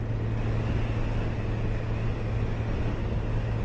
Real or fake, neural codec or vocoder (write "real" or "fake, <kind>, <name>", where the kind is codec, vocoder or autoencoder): real